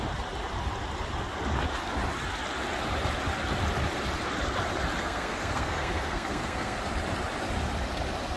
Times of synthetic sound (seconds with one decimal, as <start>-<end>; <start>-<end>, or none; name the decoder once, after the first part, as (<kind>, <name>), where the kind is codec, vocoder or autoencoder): 5.0-6.8 (codec, SNAC)